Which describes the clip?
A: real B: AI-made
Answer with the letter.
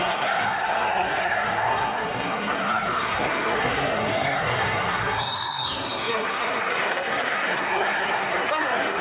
B